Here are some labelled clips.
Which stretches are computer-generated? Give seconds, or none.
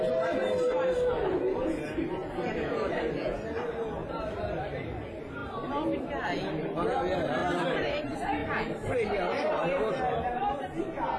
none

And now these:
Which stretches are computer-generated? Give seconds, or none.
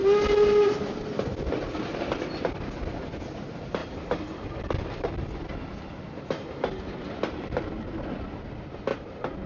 3.8-5.4; 8.9-9.5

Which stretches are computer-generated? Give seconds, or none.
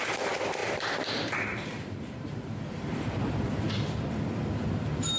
0.6-3.6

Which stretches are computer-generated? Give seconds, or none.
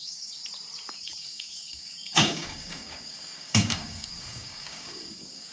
0.0-0.4; 0.9-5.5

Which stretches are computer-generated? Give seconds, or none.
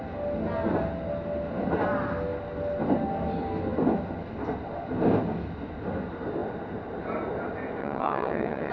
7.8-8.7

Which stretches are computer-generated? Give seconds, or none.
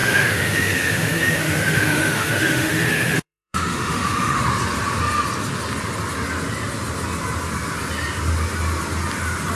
0.0-4.4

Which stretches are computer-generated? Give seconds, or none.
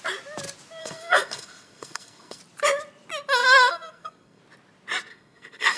0.8-2.4; 3.4-4.4; 5.1-5.8